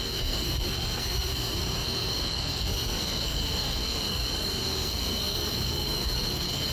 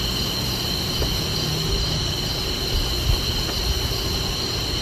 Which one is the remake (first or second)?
first